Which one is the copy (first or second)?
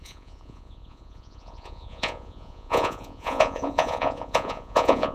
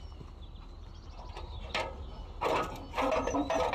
first